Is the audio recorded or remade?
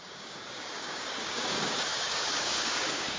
remade